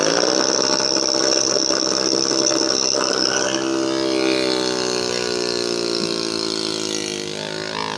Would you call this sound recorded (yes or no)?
yes